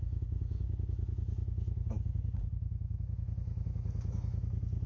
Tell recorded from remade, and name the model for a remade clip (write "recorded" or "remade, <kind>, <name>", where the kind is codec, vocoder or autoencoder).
remade, autoencoder, DAC-VAE